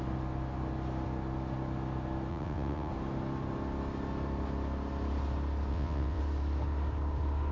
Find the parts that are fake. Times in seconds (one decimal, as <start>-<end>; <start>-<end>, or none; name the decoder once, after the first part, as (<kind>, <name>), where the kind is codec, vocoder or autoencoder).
2.3-2.9 (vocoder, WaveNeXt); 5.7-6.2

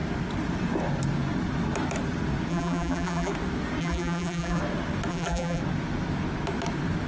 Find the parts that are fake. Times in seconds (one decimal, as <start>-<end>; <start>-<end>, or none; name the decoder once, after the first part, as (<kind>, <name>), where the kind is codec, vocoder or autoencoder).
2.5-3.3 (vocoder, BigVGAN v2); 3.8-4.6; 5.1-5.6